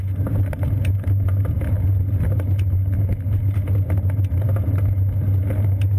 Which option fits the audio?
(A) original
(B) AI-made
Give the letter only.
A